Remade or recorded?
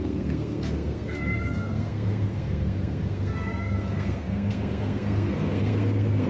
remade